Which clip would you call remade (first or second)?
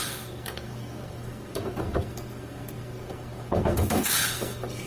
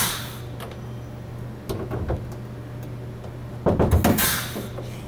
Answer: first